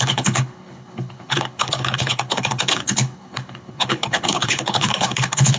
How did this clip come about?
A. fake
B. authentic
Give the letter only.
A